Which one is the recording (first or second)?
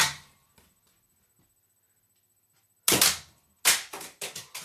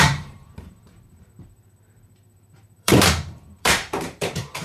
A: first